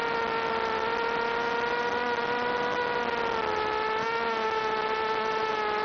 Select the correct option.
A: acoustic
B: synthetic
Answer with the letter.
A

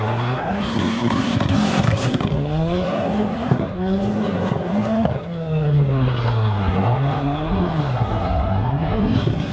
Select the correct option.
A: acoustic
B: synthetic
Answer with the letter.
B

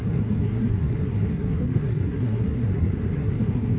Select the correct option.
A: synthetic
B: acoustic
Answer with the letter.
A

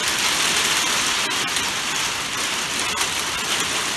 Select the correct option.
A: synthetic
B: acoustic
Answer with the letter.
B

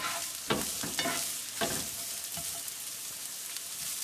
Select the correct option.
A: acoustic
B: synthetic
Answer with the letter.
A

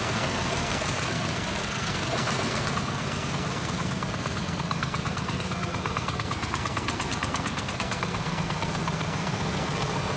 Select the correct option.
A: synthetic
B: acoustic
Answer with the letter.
A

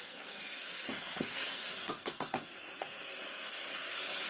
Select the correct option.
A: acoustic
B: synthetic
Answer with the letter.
B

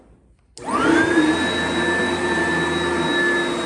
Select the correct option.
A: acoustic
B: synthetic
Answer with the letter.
A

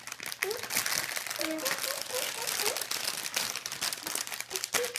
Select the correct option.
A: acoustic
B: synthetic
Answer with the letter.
A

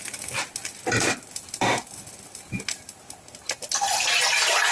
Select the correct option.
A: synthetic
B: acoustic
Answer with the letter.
B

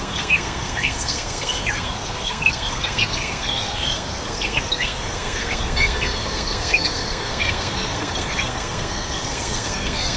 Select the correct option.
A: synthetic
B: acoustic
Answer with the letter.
A